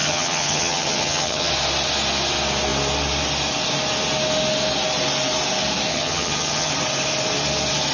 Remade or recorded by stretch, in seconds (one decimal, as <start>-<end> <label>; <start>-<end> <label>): 0.0-1.5 remade; 1.5-5.9 recorded; 5.9-6.7 remade; 6.7-7.9 recorded